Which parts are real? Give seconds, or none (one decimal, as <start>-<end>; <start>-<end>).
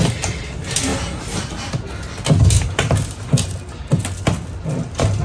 0.0-5.2